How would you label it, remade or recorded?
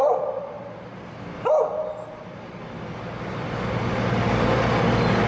recorded